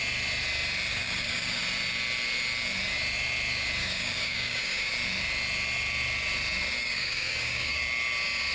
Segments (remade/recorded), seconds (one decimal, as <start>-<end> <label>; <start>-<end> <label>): 0.0-0.9 recorded; 0.9-1.6 remade; 1.6-3.8 recorded; 3.8-4.9 remade; 4.9-6.8 recorded; 6.8-7.8 remade; 7.8-8.5 recorded